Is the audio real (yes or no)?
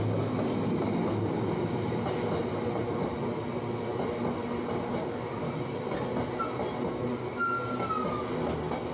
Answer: yes